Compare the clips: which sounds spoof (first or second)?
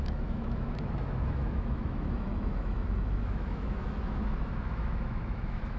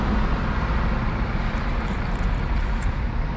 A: first